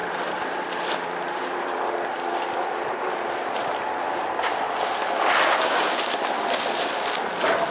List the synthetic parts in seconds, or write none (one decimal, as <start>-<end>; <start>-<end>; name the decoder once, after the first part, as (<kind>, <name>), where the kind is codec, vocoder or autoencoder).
0.0-2.7 (vocoder, BigVGAN v2)